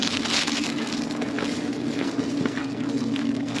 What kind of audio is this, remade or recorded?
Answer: remade